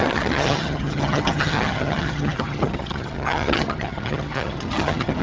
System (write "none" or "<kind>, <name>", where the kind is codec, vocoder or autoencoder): vocoder, HiFi-GAN